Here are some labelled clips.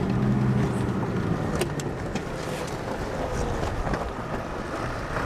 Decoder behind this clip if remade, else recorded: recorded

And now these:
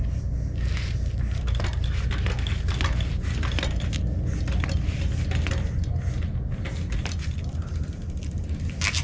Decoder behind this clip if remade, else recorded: recorded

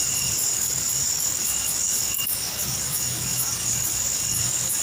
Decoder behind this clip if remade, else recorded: remade, codec, DAC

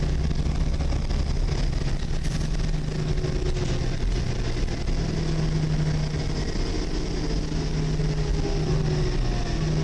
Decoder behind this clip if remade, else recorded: recorded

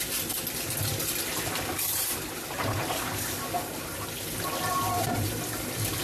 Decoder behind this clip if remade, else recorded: remade, vocoder, BigVGAN v2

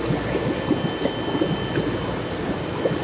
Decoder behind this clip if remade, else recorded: recorded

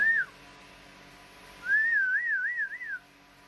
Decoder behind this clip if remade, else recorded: recorded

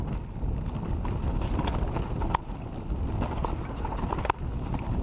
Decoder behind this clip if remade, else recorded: recorded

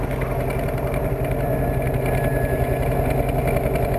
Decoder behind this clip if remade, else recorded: recorded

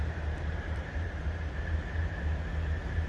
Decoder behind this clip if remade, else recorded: remade, vocoder, BigVGAN v2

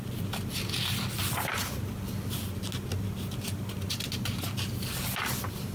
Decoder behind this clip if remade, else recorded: recorded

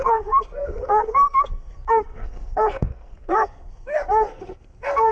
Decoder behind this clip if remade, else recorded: remade, codec, SNAC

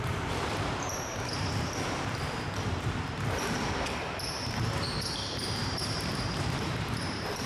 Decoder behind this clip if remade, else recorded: remade, vocoder, BigVGAN v2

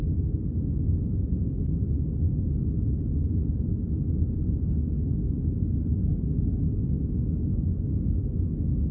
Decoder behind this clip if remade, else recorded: recorded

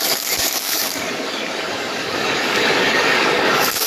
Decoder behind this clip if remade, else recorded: remade, codec, DAC